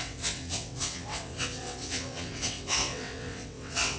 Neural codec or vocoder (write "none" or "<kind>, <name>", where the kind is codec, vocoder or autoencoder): vocoder, WaveNeXt